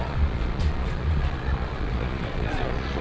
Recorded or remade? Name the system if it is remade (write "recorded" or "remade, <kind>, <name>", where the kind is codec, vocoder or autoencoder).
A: remade, vocoder, Vocos